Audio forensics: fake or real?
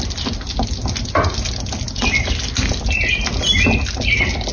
real